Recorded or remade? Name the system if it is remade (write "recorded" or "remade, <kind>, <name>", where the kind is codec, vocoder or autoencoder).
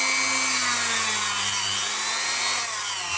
recorded